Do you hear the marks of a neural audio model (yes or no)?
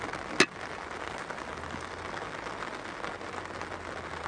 no